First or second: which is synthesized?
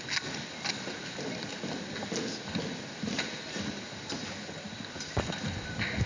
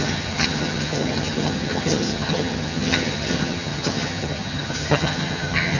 second